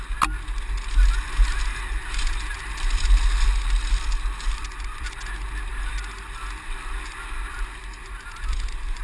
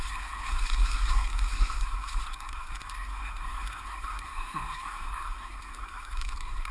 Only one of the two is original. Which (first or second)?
first